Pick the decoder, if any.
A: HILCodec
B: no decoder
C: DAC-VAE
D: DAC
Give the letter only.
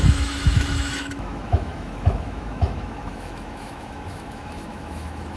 C